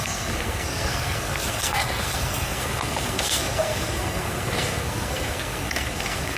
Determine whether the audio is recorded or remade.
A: remade